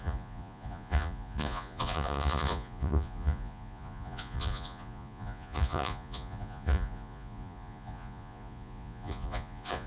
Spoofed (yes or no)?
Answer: yes